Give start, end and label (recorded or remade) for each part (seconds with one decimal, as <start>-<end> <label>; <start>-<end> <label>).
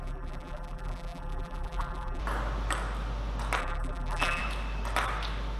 0.0-2.2 remade; 2.2-3.6 recorded; 3.6-4.4 remade; 4.4-5.6 recorded